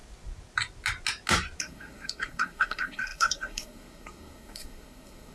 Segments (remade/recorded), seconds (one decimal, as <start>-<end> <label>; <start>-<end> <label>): 0.0-1.6 recorded; 1.6-5.3 remade